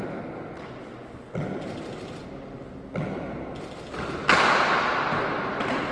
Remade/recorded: recorded